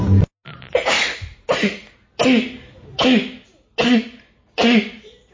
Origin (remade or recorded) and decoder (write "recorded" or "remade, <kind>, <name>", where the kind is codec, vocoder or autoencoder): recorded